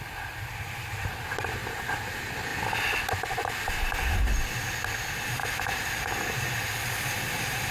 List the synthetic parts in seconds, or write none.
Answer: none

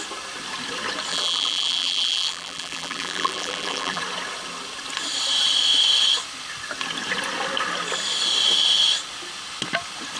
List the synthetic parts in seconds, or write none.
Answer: 1.1-4.0 (vocoder, BigVGAN v2)

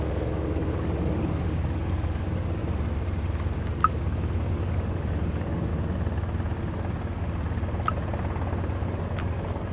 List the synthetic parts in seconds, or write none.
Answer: 0.0-2.6 (codec, DAC); 3.6-5.7; 8.8-9.7